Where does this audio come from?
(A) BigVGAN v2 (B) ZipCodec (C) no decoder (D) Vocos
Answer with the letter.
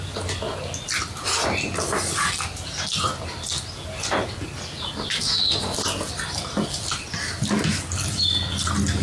C